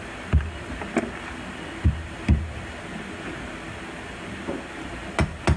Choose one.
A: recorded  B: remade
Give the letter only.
A